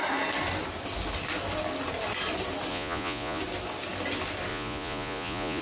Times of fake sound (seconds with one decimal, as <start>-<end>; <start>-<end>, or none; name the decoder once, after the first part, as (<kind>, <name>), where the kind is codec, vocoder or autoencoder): 2.7-3.4 (vocoder, Vocos); 4.5-5.6